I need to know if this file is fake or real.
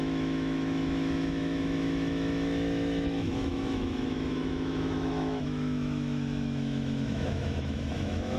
fake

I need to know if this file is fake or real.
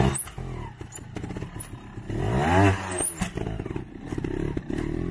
real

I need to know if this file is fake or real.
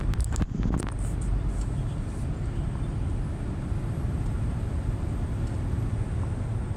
real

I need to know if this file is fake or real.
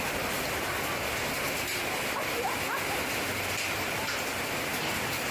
real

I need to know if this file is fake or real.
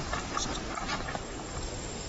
real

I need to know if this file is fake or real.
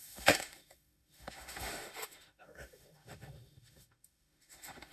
fake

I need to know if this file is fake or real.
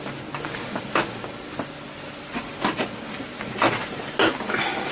real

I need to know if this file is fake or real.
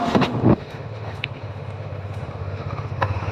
fake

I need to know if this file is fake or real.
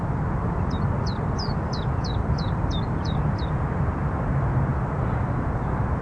real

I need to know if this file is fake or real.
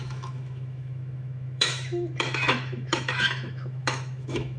fake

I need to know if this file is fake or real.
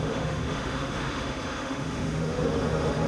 fake